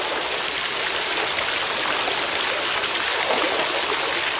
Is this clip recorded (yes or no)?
yes